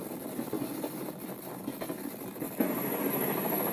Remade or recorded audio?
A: remade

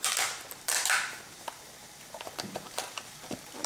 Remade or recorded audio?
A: remade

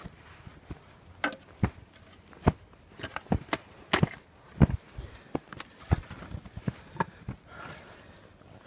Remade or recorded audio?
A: recorded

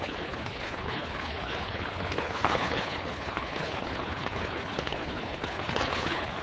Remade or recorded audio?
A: remade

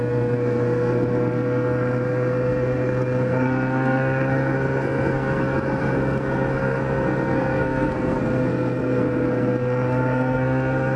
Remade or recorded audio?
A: remade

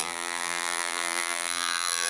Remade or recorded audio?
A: remade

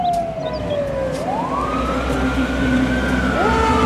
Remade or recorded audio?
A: recorded